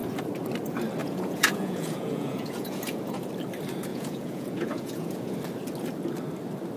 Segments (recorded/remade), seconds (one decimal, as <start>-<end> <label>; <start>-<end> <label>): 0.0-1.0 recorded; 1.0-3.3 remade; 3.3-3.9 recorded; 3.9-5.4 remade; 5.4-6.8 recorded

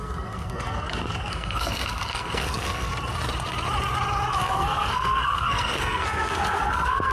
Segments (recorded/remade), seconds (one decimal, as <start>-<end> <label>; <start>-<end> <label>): 0.0-2.9 remade; 2.9-4.3 recorded; 4.3-7.1 remade

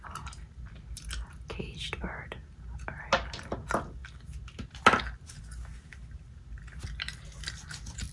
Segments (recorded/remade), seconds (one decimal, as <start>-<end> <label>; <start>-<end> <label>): 0.0-8.1 recorded

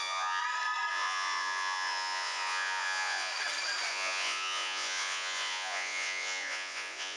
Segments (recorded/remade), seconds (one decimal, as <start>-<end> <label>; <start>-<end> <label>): 0.0-0.4 remade; 0.4-0.9 recorded; 0.9-3.3 remade; 3.3-3.9 recorded; 3.9-7.2 remade